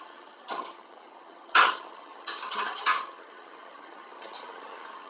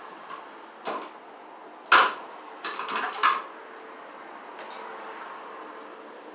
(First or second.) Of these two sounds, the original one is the second